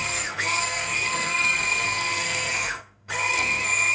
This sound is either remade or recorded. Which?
remade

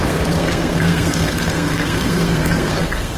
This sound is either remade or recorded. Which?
remade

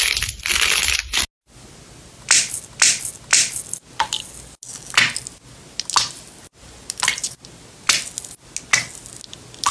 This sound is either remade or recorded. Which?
recorded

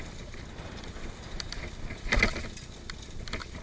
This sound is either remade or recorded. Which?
recorded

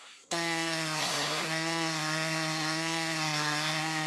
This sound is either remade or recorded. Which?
remade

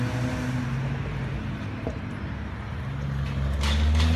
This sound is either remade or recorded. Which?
recorded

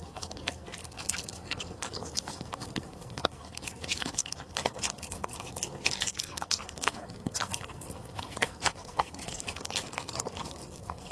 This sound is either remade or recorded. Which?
remade